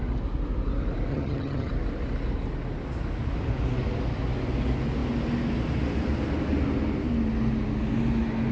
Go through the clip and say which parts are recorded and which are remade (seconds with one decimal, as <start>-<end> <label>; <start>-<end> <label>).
0.0-1.1 recorded; 1.1-1.7 remade; 1.7-8.5 recorded